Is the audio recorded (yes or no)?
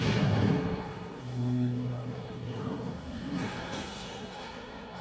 no